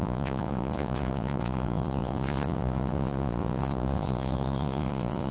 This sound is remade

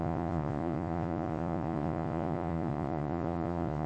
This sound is remade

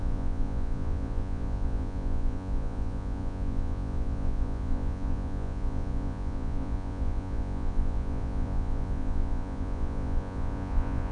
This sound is remade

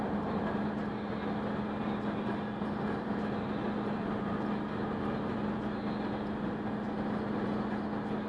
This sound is recorded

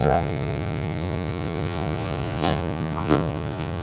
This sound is remade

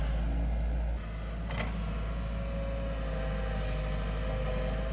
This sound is recorded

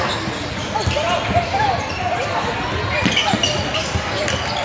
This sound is recorded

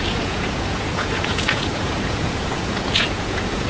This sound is remade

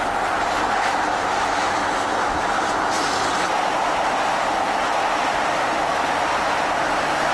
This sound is recorded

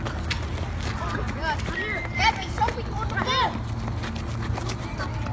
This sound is recorded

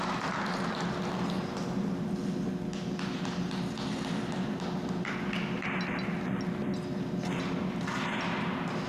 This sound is recorded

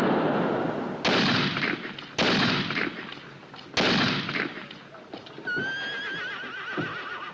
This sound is recorded